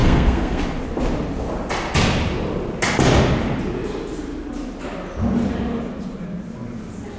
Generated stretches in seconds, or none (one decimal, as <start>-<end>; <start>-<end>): 0.0-0.6